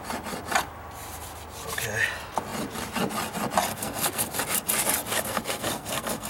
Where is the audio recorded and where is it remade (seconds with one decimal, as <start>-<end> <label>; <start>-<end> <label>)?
0.0-3.7 recorded; 3.7-4.4 remade; 4.4-5.1 recorded; 5.1-6.3 remade